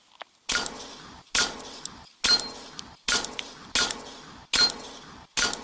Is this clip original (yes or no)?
yes